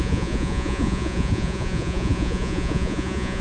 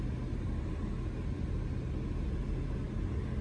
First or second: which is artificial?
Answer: first